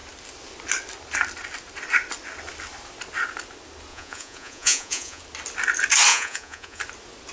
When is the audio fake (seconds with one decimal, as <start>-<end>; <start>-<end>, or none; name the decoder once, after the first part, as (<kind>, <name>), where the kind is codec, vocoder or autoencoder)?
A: 3.9-5.2 (vocoder, Vocos); 6.1-6.8